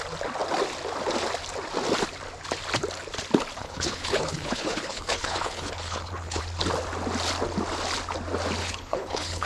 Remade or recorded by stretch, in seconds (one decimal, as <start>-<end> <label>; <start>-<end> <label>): 0.0-3.6 recorded; 3.6-6.4 remade; 6.4-8.6 recorded; 8.6-9.5 remade